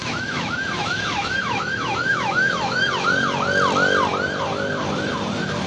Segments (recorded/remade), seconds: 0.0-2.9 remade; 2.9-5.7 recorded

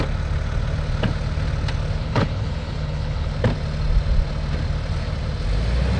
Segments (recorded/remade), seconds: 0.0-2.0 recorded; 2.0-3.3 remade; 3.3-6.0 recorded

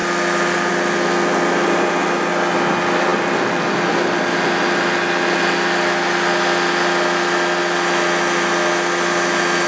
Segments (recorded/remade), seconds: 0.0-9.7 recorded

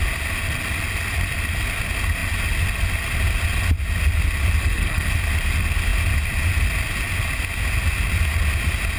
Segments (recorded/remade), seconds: 0.0-4.6 recorded; 4.6-5.1 remade; 5.1-9.0 recorded

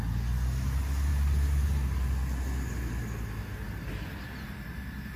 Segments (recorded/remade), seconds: 0.0-5.2 recorded

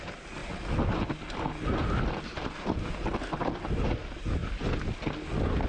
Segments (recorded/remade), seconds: 0.0-5.7 recorded

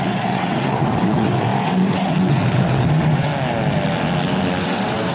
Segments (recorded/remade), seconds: 0.0-3.3 remade; 3.3-4.6 recorded; 4.6-5.1 remade

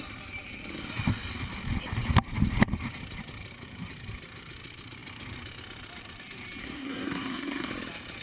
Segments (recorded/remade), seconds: 0.0-6.6 recorded; 6.6-7.7 remade; 7.7-8.2 recorded